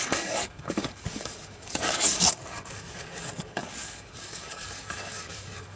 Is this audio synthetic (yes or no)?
yes